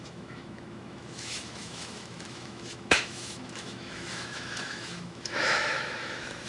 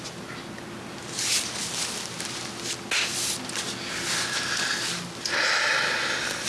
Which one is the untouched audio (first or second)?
second